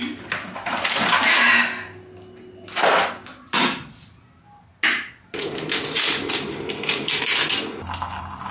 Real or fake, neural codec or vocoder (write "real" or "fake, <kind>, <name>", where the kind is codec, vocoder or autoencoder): real